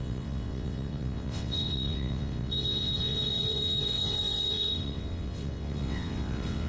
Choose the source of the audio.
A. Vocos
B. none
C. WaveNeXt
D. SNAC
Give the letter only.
C